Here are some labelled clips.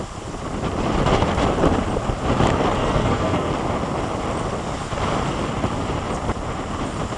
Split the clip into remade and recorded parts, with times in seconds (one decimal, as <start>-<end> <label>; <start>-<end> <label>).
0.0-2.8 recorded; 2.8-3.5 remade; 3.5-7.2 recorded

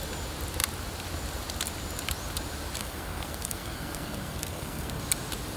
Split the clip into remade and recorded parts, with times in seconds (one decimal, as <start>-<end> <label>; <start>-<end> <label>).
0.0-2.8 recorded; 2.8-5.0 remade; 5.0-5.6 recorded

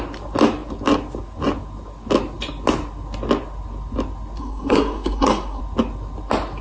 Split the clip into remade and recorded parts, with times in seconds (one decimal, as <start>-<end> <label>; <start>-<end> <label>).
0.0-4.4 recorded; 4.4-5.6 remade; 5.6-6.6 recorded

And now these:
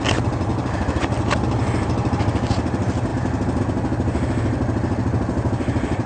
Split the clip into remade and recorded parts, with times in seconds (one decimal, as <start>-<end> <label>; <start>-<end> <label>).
0.0-6.1 recorded

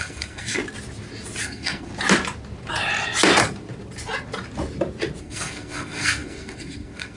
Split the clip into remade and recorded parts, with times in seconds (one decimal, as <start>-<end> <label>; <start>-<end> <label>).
0.0-0.6 remade; 0.6-1.4 recorded; 1.4-1.9 remade; 1.9-5.2 recorded; 5.2-7.2 remade